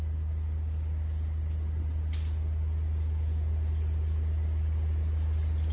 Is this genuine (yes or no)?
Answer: yes